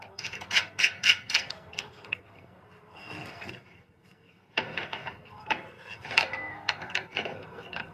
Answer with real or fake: fake